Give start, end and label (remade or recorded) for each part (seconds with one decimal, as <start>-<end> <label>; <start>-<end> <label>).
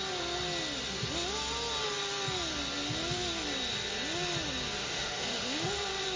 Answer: 0.0-4.8 recorded; 4.8-5.7 remade; 5.7-6.2 recorded